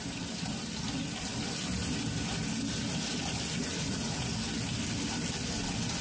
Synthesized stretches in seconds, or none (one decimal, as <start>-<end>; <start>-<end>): 3.6-4.2